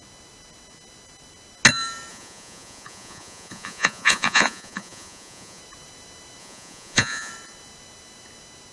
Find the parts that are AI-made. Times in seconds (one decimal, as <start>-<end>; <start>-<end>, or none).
2.1-5.6; 6.4-7.3